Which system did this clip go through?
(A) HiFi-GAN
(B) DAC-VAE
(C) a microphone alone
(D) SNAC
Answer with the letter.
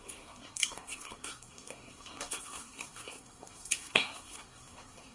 D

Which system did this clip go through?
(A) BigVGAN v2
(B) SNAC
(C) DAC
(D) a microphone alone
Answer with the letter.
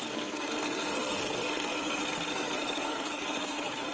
B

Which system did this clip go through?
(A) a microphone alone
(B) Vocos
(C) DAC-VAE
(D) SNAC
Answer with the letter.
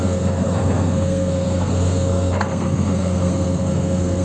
D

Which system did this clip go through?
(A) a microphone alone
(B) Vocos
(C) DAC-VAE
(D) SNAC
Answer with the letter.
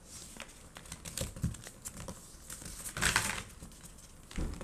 A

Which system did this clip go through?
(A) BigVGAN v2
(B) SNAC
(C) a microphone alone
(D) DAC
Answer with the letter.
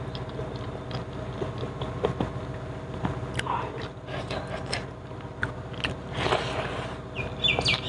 C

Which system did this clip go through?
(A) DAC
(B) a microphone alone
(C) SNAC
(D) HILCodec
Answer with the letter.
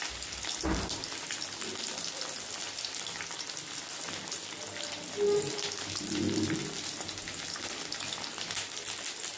B